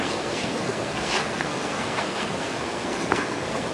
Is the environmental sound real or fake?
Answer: fake